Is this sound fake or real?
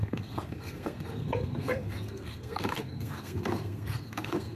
fake